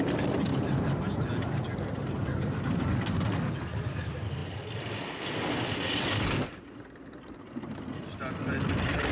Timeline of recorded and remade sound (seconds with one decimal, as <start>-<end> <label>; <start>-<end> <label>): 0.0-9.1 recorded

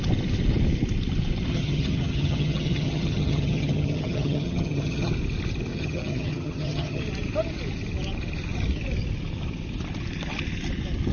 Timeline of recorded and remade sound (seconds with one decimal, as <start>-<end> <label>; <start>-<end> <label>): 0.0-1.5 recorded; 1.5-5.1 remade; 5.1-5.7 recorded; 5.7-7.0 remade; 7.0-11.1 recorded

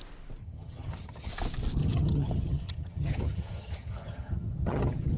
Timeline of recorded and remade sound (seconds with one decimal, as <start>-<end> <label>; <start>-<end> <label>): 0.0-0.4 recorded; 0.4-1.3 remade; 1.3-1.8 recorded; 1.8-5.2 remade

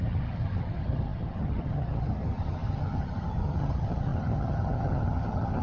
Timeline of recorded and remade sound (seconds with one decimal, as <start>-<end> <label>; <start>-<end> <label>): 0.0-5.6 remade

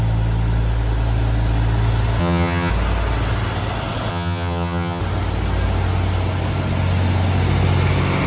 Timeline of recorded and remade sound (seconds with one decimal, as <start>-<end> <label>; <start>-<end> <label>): 0.0-2.2 recorded; 2.2-2.7 remade; 2.7-4.1 recorded; 4.1-5.0 remade; 5.0-8.3 recorded

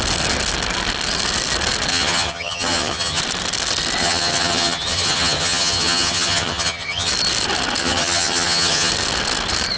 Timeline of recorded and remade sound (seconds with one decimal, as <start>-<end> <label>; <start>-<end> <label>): 0.0-1.9 recorded; 1.9-3.2 remade; 3.2-4.0 recorded; 4.0-7.1 remade; 7.1-7.8 recorded; 7.8-8.9 remade; 8.9-9.8 recorded

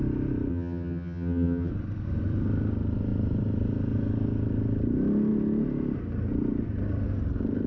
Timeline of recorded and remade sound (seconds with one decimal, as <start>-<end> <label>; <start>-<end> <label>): 0.0-0.5 recorded; 0.5-1.7 remade; 1.7-7.7 recorded